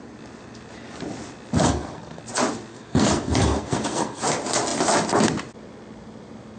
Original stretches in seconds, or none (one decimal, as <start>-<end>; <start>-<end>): 0.0-1.6; 2.2-2.7; 4.2-6.6